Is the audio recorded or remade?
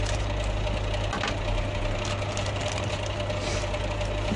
recorded